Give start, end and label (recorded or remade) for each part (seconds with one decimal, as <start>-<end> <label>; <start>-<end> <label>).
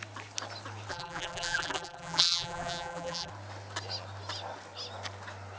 0.0-0.9 recorded; 0.9-3.3 remade; 3.3-5.6 recorded